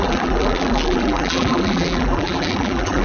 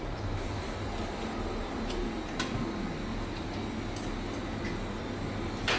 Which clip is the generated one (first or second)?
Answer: first